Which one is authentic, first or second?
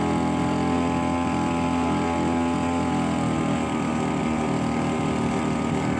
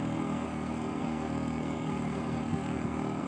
first